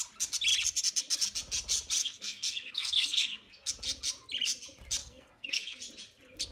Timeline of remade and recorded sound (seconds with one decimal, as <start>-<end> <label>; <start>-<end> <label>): 0.0-2.0 recorded; 2.0-3.7 remade; 3.7-5.0 recorded; 5.0-5.8 remade; 5.8-6.5 recorded